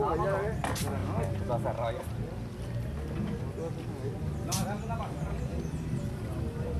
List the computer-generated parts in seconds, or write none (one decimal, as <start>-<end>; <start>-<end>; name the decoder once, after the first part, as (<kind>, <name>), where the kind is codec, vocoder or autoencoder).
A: none